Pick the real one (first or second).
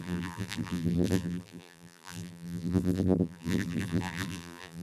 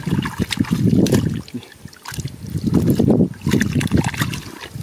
second